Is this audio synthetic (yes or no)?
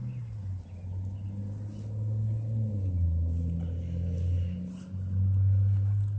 no